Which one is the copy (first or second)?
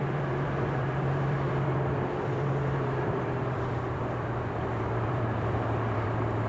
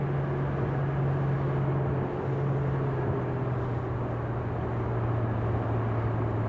first